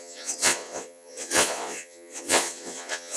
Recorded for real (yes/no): no